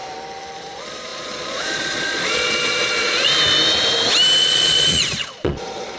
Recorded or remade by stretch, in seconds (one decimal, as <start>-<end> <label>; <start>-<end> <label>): 0.0-0.6 recorded; 0.6-3.3 remade; 3.3-4.4 recorded; 4.4-6.0 remade